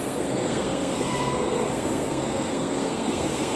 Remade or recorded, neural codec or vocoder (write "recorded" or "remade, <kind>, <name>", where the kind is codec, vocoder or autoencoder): remade, codec, SNAC